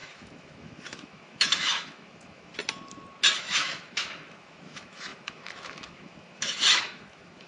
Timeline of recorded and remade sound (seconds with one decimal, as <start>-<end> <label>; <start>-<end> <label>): 0.0-2.5 remade; 2.5-3.4 recorded; 3.4-7.5 remade